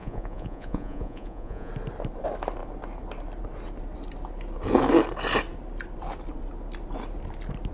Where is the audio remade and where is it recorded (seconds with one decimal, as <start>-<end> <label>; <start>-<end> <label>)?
0.0-1.7 remade; 1.7-7.7 recorded